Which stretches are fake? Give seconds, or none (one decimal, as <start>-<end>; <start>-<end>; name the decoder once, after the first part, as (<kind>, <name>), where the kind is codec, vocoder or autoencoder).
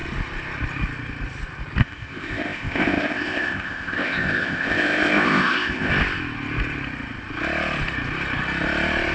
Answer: 1.8-5.9 (codec, ZipCodec)